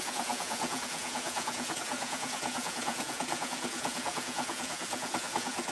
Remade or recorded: remade